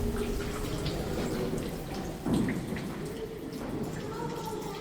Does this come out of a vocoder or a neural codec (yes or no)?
no